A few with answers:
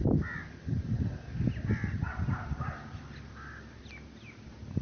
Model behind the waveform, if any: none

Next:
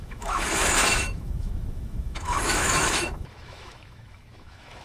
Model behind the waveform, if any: autoencoder, DAC-VAE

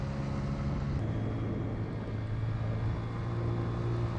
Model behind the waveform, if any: none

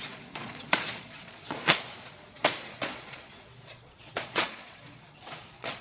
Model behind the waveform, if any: vocoder, Vocos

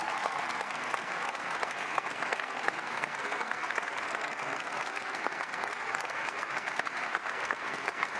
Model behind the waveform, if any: codec, SNAC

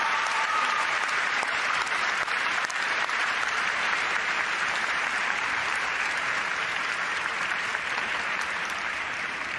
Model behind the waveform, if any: vocoder, BigVGAN v2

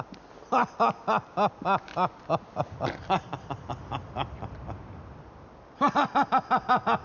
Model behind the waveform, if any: none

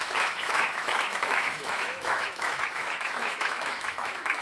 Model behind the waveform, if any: autoencoder, DAC-VAE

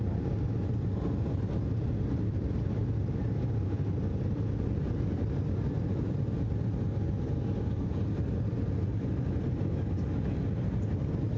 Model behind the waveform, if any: none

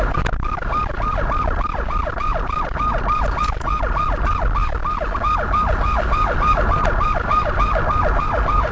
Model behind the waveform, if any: none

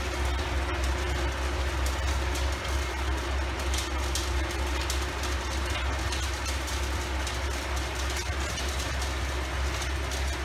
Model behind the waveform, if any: none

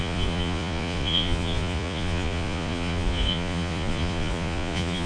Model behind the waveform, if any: vocoder, Vocos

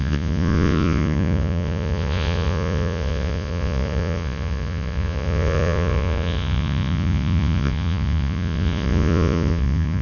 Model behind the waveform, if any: vocoder, Vocos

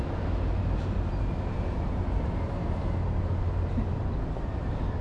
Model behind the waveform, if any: none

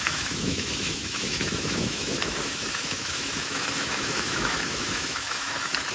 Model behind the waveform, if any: autoencoder, DAC-VAE